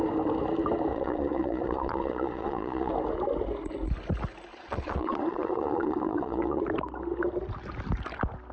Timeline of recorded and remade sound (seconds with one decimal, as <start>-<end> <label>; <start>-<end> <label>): 0.0-0.9 recorded; 0.9-2.9 remade; 2.9-4.5 recorded; 4.5-6.6 remade; 6.6-8.5 recorded